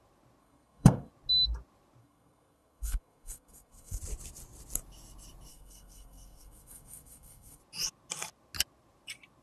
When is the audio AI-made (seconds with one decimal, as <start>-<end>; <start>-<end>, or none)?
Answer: 0.4-1.1; 2.0-4.0; 5.5-7.6